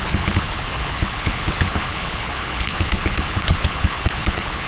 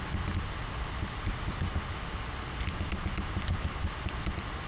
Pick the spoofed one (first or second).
first